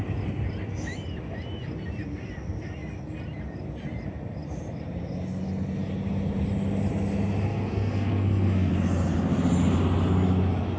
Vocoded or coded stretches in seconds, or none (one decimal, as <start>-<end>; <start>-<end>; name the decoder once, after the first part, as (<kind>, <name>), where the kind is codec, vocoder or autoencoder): 7.5-8.7 (codec, SNAC)